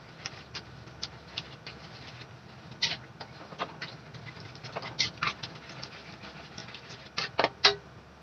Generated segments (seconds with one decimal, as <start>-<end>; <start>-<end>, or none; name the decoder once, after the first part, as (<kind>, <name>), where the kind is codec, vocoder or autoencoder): 6.6-7.1 (vocoder, BigVGAN v2)